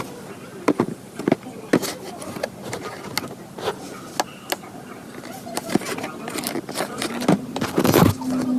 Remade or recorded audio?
recorded